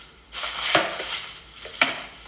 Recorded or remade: remade